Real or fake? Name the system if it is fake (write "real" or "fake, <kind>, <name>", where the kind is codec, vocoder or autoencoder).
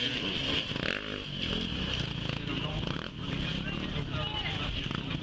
real